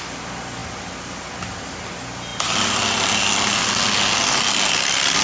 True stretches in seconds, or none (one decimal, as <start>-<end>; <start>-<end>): 0.0-5.2